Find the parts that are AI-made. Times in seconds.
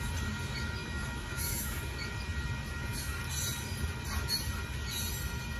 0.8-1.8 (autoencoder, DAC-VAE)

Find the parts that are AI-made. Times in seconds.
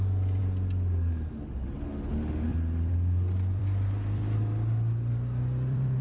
2.5-6.0 (vocoder, BigVGAN v2)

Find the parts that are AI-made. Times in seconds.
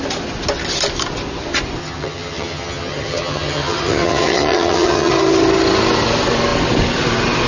1.8-5.1 (vocoder, HiFi-GAN)